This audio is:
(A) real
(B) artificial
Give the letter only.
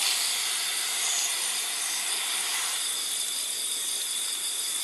A